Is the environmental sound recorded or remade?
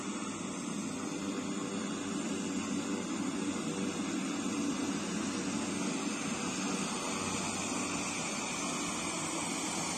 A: recorded